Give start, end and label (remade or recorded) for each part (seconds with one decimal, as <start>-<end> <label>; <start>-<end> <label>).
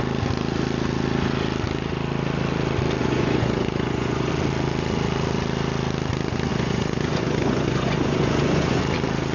0.0-3.0 recorded; 3.0-4.3 remade; 4.3-6.5 recorded; 6.5-8.8 remade; 8.8-9.3 recorded